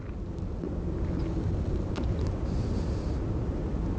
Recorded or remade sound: recorded